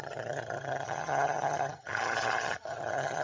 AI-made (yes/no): yes